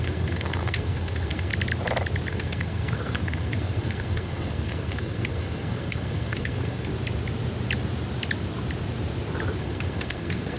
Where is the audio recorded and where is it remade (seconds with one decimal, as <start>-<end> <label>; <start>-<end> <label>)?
0.0-1.5 remade; 1.5-2.3 recorded; 2.3-6.9 remade; 6.9-9.6 recorded; 9.6-10.6 remade